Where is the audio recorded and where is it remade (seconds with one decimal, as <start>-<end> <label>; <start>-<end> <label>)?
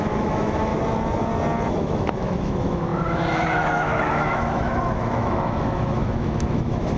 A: 0.0-0.7 remade; 0.7-1.7 recorded; 1.7-7.0 remade